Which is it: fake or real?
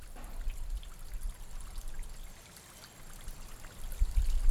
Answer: real